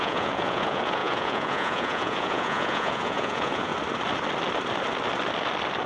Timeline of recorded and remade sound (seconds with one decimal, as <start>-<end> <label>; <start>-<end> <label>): 0.0-3.7 remade; 3.7-5.9 recorded